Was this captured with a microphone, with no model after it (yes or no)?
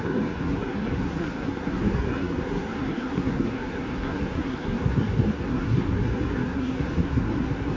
no